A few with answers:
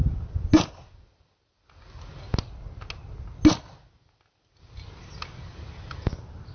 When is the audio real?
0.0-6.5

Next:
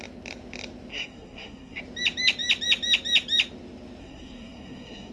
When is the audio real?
0.0-0.9; 1.8-4.0

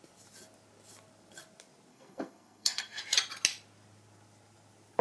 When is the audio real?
0.0-1.9; 3.0-5.0

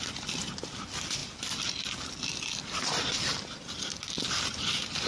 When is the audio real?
0.0-5.1

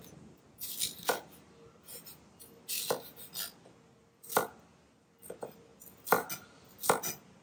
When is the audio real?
0.0-7.4